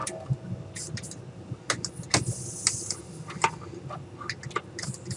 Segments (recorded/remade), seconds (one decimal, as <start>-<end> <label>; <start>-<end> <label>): 0.0-5.2 recorded

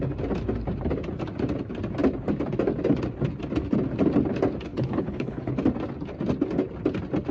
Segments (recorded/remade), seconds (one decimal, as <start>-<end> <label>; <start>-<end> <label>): 0.0-4.7 recorded; 4.7-5.5 remade; 5.5-7.3 recorded

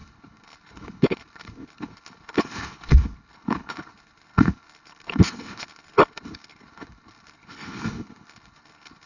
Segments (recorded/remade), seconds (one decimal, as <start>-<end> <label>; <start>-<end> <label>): 0.0-9.1 remade

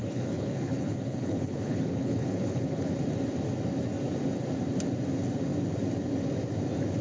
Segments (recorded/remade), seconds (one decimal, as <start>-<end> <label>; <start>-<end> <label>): 0.0-2.9 remade; 2.9-7.0 recorded

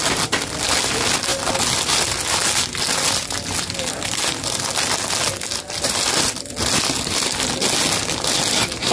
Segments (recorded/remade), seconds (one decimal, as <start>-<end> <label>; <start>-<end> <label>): 0.0-8.9 recorded

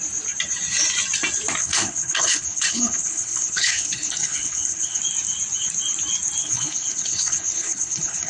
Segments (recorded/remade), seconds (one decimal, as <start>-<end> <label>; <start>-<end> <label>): 0.0-1.6 recorded; 1.6-5.0 remade; 5.0-6.4 recorded; 6.4-8.3 remade